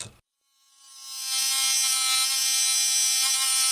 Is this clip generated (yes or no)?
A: no